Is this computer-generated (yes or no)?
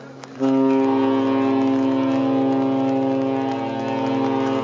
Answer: no